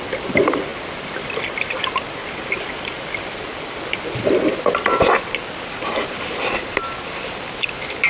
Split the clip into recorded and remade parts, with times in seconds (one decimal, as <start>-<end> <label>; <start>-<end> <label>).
0.0-8.1 recorded